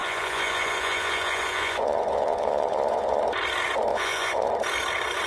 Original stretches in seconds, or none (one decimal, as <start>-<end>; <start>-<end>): 3.2-3.9; 4.5-5.3